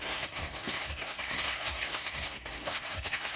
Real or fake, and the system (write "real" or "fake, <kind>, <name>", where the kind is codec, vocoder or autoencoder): fake, codec, SNAC